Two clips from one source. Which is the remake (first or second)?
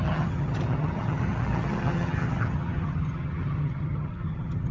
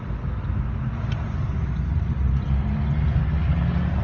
first